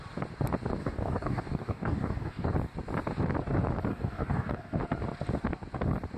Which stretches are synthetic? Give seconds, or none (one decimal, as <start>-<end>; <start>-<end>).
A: 0.8-2.5; 3.9-4.8